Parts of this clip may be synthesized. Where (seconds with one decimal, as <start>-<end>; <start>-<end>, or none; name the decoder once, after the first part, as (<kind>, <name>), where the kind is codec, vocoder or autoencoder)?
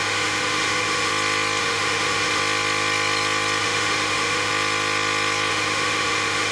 0.0-1.1 (autoencoder, DAC-VAE); 1.6-2.4; 3.6-4.5; 5.5-6.5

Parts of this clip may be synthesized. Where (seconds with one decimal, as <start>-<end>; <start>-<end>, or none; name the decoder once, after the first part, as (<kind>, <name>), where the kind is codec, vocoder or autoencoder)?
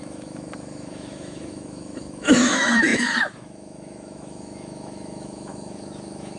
0.0-6.4 (autoencoder, DAC-VAE)